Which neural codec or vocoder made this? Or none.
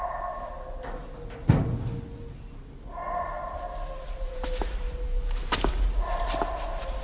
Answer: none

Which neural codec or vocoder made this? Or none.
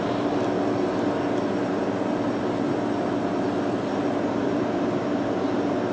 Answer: none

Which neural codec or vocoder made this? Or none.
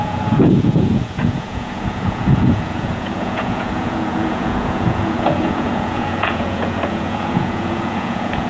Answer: vocoder, Vocos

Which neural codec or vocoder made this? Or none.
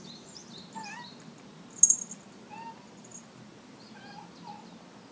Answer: none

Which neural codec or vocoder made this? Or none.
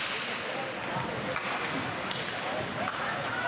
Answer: none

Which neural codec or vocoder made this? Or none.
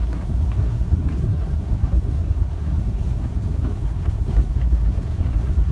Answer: codec, SNAC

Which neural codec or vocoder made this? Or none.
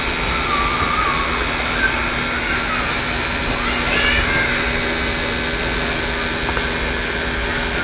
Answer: none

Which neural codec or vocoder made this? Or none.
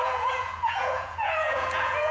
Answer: vocoder, Vocos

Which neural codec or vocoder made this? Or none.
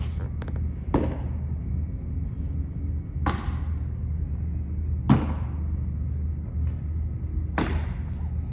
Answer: none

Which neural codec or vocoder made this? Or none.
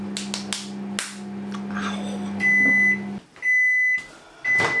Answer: none